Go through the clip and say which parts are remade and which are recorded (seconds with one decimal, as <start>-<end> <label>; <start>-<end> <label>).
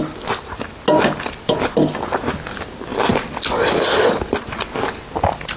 0.0-5.6 recorded